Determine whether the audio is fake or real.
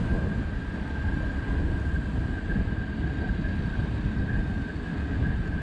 real